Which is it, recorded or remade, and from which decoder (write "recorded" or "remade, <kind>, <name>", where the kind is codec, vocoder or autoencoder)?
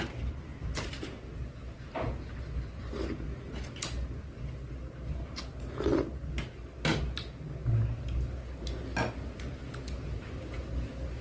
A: recorded